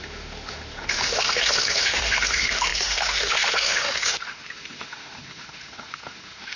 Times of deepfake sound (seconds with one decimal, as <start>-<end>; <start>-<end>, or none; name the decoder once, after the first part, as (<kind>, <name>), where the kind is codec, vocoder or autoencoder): 0.0-6.6 (autoencoder, DAC-VAE)